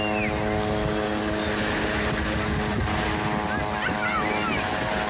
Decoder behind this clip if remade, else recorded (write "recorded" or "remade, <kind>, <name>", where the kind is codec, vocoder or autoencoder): recorded